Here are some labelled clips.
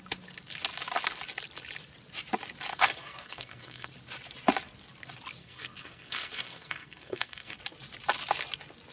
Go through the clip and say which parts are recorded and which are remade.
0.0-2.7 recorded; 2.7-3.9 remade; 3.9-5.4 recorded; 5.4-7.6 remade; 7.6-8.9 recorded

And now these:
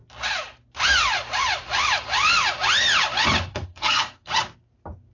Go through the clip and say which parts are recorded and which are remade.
0.0-3.5 recorded; 3.5-4.3 remade; 4.3-5.1 recorded

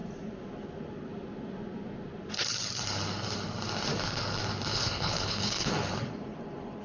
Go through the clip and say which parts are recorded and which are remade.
0.0-4.7 recorded; 4.7-5.7 remade; 5.7-6.8 recorded

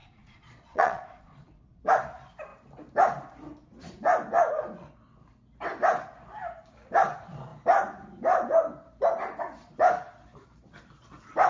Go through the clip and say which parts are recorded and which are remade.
0.0-1.8 remade; 1.8-11.5 recorded

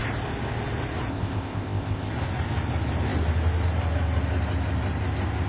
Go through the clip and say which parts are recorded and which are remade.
0.0-1.1 recorded; 1.1-2.1 remade; 2.1-5.5 recorded